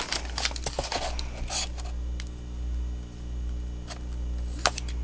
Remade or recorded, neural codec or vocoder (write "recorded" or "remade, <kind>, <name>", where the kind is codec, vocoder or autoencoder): recorded